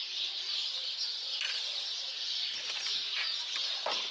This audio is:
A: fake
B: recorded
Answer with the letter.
B